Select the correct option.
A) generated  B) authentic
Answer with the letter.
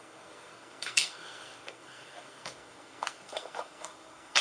A